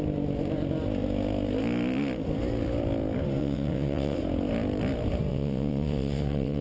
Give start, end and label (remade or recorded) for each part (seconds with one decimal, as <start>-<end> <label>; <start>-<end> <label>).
0.0-3.4 recorded; 3.4-4.2 remade; 4.2-5.3 recorded; 5.3-6.6 remade